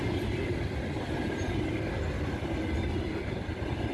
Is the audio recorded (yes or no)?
yes